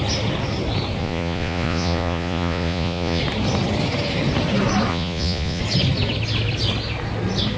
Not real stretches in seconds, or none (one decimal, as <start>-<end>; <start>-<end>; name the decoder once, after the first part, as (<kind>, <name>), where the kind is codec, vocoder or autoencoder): 1.0-3.2 (vocoder, Vocos); 4.9-5.6